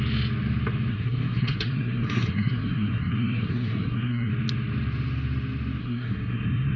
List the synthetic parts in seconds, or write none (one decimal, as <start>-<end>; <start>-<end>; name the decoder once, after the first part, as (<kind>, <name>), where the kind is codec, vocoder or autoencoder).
0.9-4.3 (codec, SNAC); 5.8-6.8